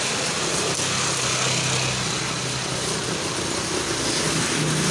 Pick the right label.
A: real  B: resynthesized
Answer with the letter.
A